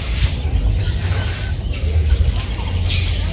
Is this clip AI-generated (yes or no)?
no